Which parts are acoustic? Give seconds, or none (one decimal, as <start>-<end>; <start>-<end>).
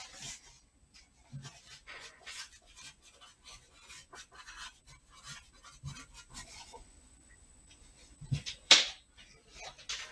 0.0-1.4; 4.8-6.3; 8.7-10.1